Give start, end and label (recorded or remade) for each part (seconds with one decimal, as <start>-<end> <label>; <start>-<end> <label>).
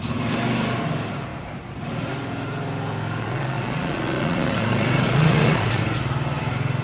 0.0-3.2 recorded; 3.2-5.8 remade; 5.8-6.8 recorded